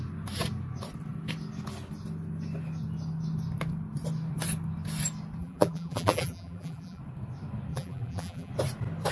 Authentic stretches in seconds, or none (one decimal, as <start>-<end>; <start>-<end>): 0.0-5.4; 7.0-7.7; 8.5-9.1